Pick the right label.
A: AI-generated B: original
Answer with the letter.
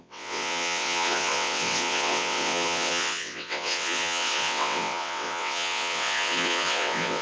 A